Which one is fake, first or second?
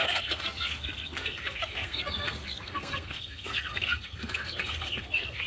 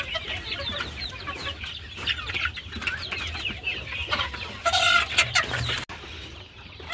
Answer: first